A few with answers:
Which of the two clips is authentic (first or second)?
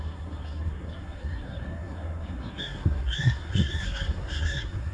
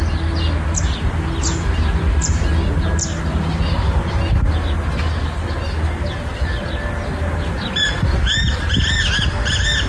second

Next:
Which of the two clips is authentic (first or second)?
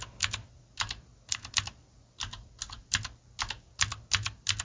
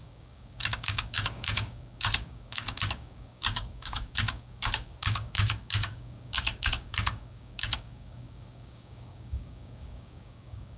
first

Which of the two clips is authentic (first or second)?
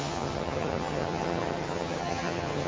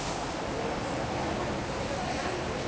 second